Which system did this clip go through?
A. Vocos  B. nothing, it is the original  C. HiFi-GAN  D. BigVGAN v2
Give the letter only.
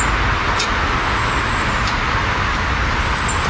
B